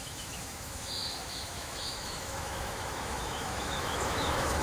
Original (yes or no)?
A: no